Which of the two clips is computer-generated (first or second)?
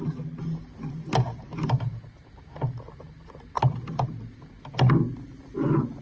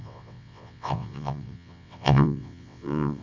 second